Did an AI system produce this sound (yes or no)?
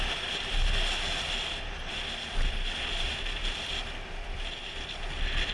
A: no